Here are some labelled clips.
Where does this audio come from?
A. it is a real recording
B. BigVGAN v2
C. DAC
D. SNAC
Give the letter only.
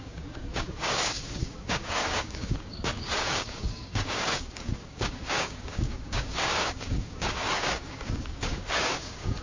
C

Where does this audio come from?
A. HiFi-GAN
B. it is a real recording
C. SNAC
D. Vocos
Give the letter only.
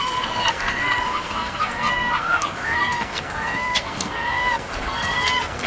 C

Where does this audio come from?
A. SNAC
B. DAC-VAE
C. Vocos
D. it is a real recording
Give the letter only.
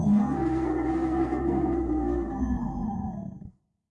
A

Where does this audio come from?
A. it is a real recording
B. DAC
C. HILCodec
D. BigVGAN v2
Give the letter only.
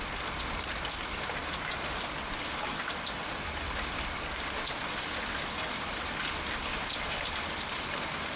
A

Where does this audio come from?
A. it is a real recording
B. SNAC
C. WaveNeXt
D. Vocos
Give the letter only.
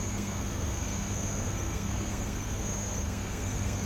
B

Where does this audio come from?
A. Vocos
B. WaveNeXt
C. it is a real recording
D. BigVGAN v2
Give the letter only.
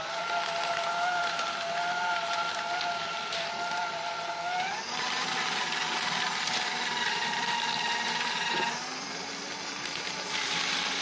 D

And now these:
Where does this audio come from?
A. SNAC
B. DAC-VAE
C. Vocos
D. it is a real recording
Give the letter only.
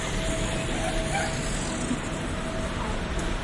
D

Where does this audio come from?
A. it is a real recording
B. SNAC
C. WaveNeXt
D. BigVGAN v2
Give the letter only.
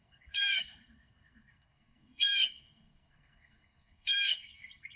B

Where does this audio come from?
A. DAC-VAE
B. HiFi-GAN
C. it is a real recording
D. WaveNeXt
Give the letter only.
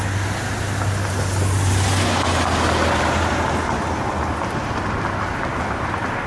C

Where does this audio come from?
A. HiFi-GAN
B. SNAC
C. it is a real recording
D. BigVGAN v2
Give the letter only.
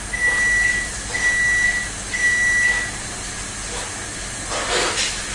C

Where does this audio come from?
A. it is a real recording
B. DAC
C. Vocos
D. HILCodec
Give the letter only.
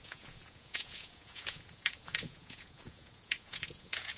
C